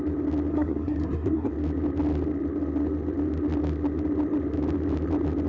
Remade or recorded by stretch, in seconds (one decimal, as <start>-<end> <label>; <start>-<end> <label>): 0.0-0.5 recorded; 0.5-1.5 remade; 1.5-5.5 recorded